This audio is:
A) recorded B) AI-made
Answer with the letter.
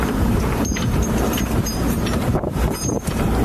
B